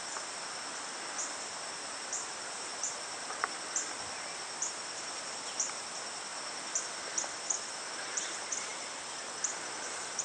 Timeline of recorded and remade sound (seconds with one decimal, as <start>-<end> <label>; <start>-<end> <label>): 0.0-10.2 recorded